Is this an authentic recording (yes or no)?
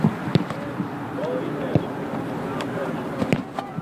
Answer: yes